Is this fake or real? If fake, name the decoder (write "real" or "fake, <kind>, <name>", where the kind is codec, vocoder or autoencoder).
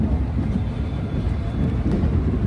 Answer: real